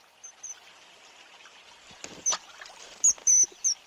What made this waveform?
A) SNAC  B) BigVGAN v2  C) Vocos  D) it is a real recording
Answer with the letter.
D